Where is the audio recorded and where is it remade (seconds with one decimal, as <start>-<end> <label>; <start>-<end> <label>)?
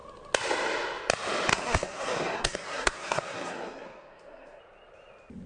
0.0-1.5 recorded; 1.5-4.6 remade; 4.6-5.5 recorded